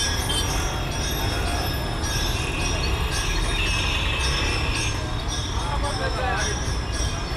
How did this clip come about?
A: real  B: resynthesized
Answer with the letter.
A